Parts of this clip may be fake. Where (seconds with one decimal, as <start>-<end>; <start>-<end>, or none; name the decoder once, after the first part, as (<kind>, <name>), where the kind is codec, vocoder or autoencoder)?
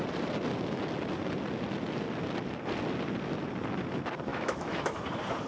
4.3-5.1 (autoencoder, DAC-VAE)